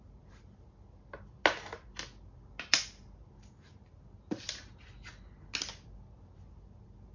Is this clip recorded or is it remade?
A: recorded